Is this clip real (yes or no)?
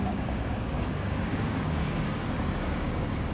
no